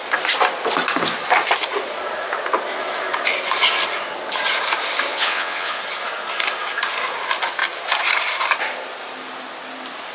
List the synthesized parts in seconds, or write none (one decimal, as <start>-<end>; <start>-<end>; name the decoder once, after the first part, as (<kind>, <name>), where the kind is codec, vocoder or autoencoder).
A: 5.1-5.8 (vocoder, WaveNeXt)